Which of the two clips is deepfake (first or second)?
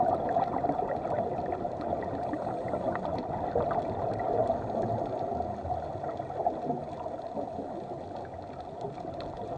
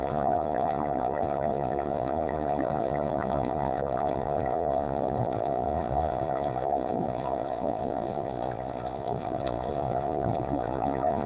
second